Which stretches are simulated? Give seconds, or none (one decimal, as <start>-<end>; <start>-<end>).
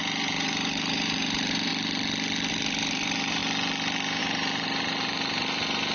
0.0-1.7; 2.5-3.4; 4.2-5.9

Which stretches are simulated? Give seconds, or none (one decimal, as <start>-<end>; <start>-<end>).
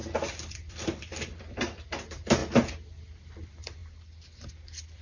0.5-2.4; 3.3-3.8; 4.5-5.0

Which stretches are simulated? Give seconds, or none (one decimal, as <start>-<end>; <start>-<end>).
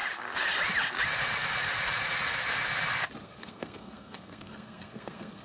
3.2-5.4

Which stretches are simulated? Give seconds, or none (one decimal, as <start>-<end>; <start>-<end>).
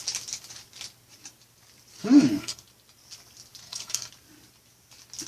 2.0-2.6; 3.6-4.1